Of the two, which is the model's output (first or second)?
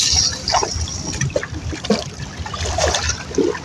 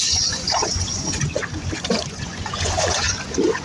second